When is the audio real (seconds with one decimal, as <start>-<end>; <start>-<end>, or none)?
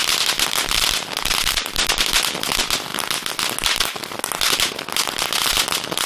0.0-6.1